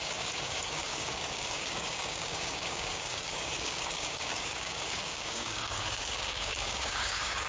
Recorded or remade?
remade